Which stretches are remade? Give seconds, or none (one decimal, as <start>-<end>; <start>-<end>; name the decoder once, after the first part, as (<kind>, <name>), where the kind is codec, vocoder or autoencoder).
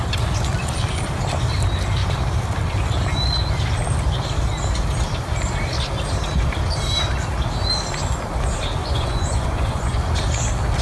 8.8-10.0 (vocoder, Vocos)